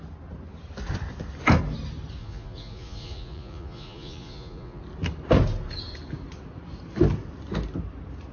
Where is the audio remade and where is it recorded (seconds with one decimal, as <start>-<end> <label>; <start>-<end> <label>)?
0.0-2.2 recorded; 2.2-4.8 remade; 4.8-8.3 recorded